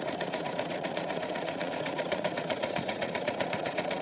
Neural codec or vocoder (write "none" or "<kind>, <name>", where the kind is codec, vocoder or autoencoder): vocoder, Vocos